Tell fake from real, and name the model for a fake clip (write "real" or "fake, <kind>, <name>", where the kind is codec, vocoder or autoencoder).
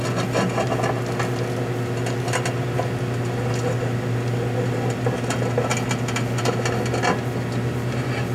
real